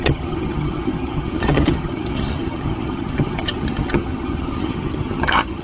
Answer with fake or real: fake